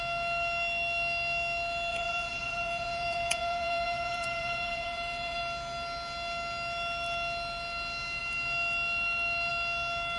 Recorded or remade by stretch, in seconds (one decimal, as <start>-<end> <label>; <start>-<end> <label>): 0.0-1.9 recorded; 1.9-5.4 remade; 5.4-10.2 recorded